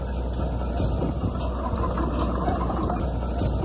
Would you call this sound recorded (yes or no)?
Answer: yes